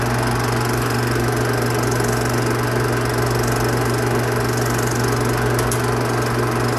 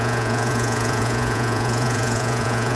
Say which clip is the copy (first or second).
second